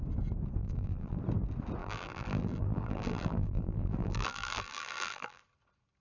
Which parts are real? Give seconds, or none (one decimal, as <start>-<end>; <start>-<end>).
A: 0.0-0.6; 1.2-1.8; 5.4-6.0